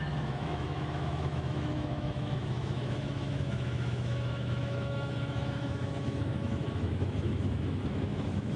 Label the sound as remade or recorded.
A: remade